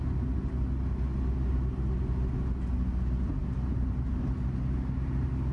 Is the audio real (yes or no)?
yes